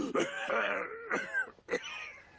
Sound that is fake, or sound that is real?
real